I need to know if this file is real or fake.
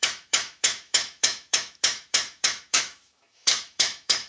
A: fake